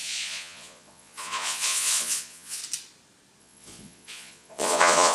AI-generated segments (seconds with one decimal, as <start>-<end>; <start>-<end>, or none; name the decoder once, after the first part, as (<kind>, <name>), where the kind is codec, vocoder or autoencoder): 0.0-2.6 (vocoder, Vocos); 3.4-5.1